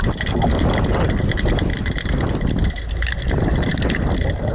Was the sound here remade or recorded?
recorded